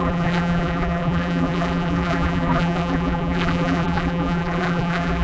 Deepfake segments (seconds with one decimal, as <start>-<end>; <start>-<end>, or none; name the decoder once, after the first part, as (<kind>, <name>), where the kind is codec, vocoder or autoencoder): 0.0-5.2 (vocoder, BigVGAN v2)